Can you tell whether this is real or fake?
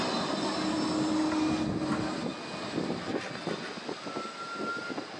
real